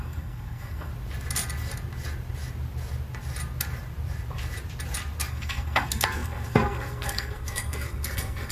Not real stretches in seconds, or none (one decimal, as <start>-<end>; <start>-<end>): 0.0-0.9; 5.3-8.5